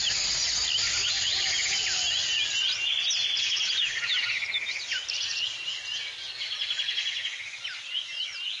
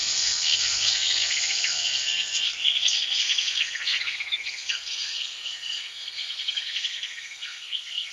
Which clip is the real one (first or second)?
first